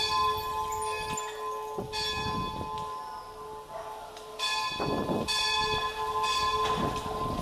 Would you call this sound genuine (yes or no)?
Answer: yes